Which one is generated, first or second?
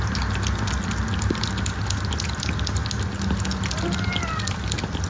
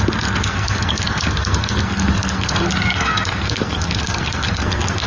second